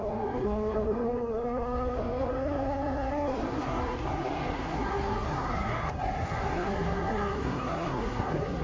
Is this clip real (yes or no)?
no